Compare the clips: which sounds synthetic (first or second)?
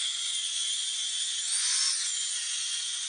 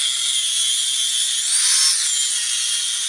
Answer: first